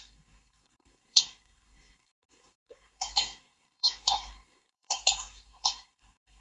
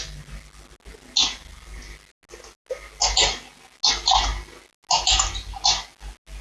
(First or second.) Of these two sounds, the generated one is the first